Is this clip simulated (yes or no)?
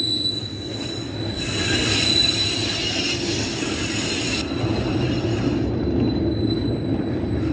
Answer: no